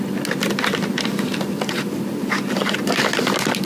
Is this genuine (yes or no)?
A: yes